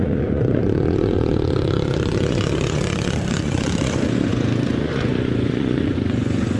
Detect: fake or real fake